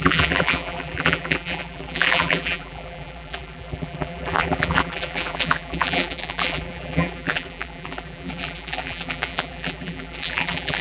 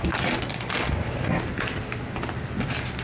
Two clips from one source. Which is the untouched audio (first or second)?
second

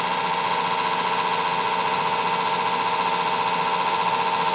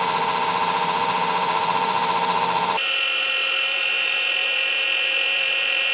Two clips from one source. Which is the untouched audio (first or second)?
first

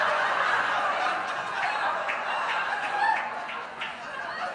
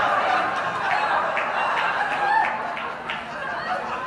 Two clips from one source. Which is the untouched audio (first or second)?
second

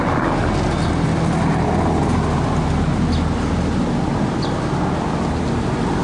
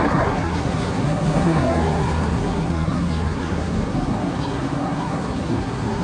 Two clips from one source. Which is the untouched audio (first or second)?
first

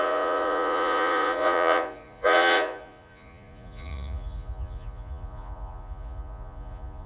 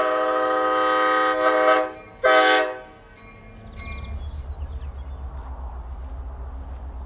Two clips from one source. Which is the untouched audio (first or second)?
second